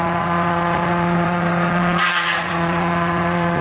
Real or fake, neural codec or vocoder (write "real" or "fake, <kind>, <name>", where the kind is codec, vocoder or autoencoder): fake, vocoder, Vocos